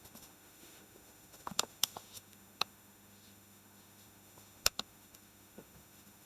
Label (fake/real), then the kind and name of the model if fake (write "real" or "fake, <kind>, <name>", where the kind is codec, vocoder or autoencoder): fake, autoencoder, DAC-VAE